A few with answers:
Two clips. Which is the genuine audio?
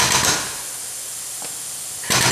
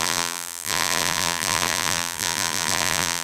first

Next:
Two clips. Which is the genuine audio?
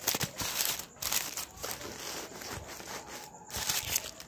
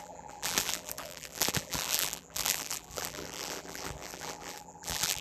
first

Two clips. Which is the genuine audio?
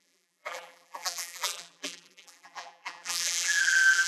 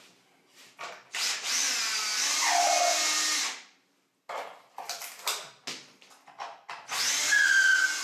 second